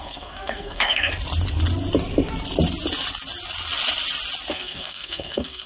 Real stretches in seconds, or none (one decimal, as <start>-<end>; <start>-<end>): 1.1-4.5